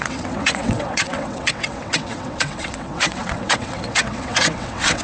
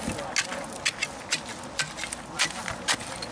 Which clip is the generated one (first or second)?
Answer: first